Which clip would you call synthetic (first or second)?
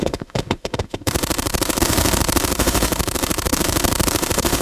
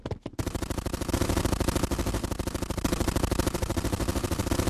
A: first